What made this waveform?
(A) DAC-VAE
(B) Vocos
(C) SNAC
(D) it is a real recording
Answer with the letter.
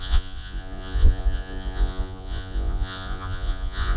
B